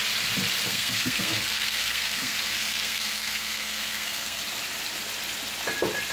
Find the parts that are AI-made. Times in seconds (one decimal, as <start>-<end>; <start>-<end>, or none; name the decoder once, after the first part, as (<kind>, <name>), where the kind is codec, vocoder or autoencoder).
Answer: 0.7-4.4 (codec, SNAC)